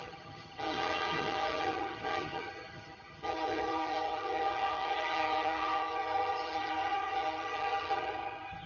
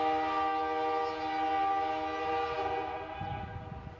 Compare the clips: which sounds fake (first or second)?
first